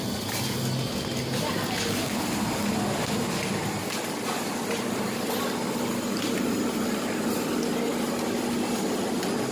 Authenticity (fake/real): real